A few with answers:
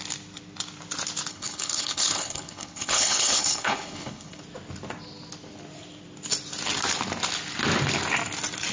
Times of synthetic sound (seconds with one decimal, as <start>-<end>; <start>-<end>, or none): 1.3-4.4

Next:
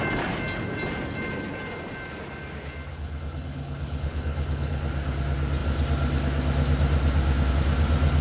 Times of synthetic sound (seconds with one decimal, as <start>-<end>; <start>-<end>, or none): 2.9-4.8

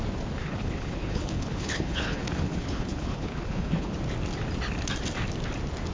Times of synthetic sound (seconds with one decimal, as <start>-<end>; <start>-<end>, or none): 0.4-3.9

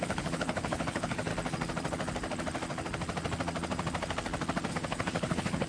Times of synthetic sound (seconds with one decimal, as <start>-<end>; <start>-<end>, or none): 0.0-1.3; 4.7-5.7

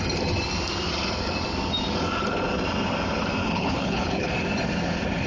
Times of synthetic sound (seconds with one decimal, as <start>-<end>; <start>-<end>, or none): 3.4-4.3

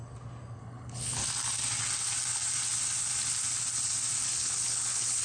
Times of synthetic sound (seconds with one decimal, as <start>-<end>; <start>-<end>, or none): 0.6-1.2; 4.3-5.2